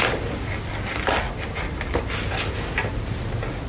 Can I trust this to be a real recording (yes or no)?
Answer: yes